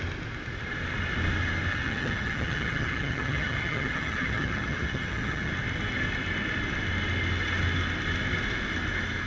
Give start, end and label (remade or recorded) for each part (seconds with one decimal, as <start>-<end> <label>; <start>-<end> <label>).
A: 0.0-1.7 recorded; 1.7-5.5 remade; 5.5-9.3 recorded